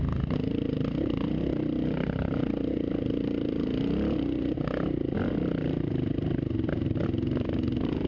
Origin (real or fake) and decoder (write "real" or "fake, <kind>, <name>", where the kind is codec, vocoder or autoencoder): real